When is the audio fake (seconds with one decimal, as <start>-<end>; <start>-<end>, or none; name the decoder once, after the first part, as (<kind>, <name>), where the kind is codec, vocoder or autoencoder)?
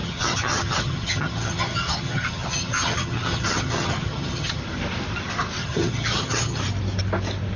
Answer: 0.0-4.6 (vocoder, HiFi-GAN); 5.6-6.6